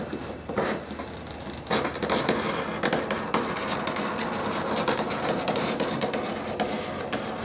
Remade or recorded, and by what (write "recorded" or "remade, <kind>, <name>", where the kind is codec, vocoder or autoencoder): recorded